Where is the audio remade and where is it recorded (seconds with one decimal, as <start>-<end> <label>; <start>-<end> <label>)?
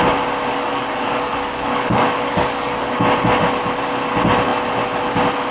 0.0-0.5 recorded; 0.5-2.9 remade; 2.9-5.5 recorded